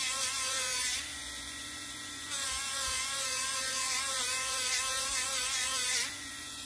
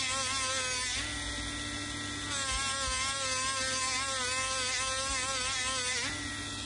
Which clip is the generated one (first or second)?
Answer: first